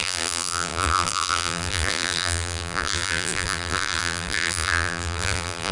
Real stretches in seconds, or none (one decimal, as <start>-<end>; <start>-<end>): none